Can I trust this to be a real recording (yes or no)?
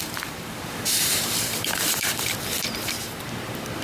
no